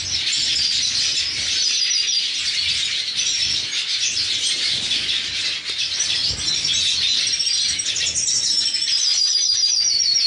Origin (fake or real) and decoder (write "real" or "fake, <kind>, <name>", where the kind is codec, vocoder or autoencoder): real